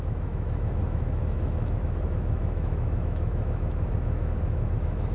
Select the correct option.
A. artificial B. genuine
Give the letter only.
A